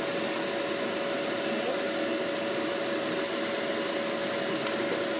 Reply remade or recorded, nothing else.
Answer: recorded